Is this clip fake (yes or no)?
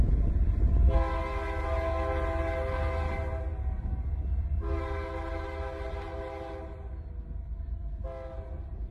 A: no